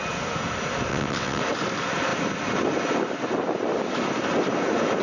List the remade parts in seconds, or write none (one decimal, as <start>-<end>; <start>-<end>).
0.9-1.4